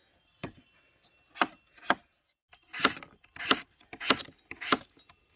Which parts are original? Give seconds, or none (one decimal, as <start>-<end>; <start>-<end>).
0.0-5.4